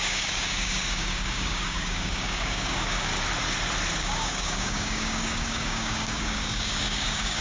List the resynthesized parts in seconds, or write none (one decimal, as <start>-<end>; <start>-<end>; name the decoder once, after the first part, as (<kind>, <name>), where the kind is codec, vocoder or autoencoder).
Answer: 0.0-3.1 (codec, DAC); 4.0-7.4